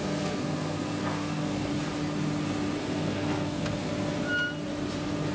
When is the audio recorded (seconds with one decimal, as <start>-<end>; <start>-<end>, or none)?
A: 1.7-2.8; 3.9-5.3